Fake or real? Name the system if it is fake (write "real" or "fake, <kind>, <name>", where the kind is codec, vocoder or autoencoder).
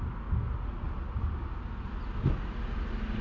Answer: real